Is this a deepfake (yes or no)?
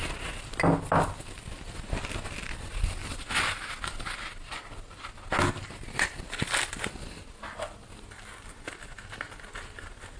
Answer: no